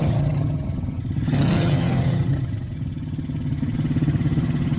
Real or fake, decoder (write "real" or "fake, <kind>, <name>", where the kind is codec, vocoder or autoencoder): fake, vocoder, HiFi-GAN